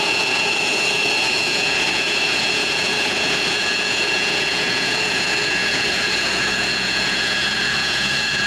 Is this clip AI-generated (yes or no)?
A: yes